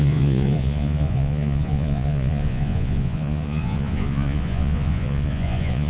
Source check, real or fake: fake